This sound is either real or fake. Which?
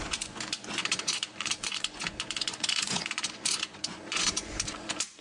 fake